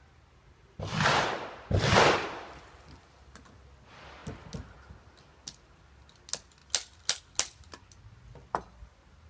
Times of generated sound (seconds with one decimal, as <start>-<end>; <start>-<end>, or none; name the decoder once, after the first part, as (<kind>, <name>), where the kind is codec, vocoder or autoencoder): none